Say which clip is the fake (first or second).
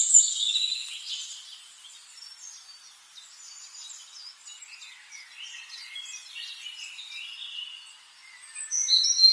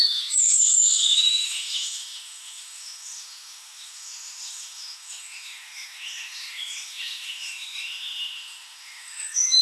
second